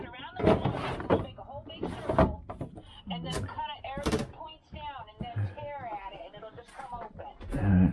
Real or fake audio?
real